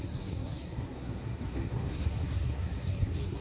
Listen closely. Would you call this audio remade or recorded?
remade